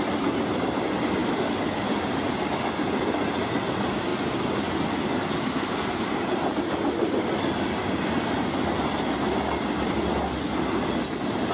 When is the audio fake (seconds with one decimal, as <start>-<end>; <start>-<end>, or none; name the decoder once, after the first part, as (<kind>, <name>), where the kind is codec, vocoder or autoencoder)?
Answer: none